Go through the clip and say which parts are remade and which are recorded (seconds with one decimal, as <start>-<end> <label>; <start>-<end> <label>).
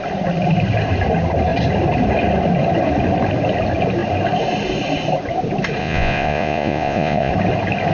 0.0-5.8 recorded; 5.8-7.3 remade; 7.3-7.9 recorded